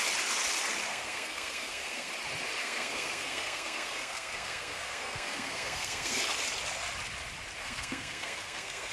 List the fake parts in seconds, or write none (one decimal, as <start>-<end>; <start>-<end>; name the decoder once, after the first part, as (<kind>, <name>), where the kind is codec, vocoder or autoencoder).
0.9-2.1 (codec, SNAC); 2.6-6.2; 7.6-8.9

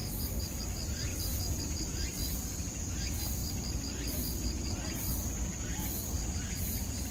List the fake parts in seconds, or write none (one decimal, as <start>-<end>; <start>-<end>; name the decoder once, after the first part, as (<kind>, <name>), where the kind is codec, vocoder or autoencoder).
0.0-0.6 (vocoder, BigVGAN v2); 1.1-1.6; 3.4-6.3

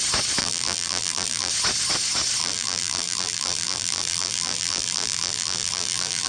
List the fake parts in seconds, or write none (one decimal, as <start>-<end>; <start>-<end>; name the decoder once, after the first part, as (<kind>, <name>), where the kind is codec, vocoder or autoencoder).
0.4-1.5 (vocoder, BigVGAN v2); 2.4-6.3

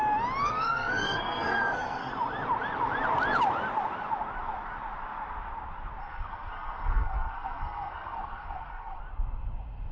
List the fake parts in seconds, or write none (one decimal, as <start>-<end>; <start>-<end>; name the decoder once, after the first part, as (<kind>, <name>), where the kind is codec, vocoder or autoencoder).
0.4-2.1 (codec, SNAC); 6.0-9.0

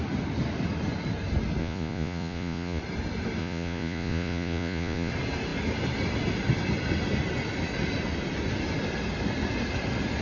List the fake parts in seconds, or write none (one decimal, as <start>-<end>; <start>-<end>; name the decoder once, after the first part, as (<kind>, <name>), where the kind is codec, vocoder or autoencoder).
1.6-2.8 (vocoder, Vocos); 3.4-5.1

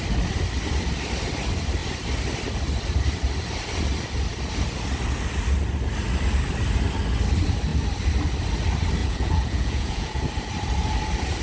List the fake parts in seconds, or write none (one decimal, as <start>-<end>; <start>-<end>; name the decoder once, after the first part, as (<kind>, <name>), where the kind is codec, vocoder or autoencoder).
9.0-10.2 (vocoder, Vocos)

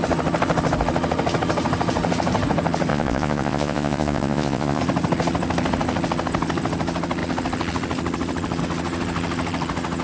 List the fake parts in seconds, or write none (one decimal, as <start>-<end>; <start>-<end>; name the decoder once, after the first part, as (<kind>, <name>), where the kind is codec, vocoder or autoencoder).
2.9-4.8 (vocoder, Vocos)